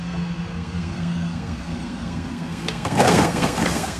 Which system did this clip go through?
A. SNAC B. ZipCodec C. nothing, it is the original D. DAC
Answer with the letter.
A